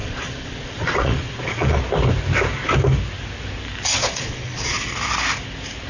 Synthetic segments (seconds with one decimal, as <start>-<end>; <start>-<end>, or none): 0.0-1.8; 4.0-4.8

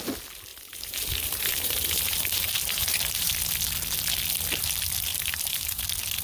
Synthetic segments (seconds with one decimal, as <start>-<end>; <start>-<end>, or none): 0.5-3.3; 5.1-5.8

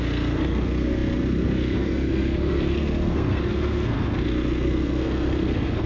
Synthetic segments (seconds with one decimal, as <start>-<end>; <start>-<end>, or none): 0.0-5.9